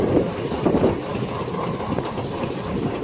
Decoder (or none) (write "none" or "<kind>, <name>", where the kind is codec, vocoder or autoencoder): none